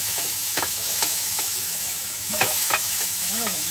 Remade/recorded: remade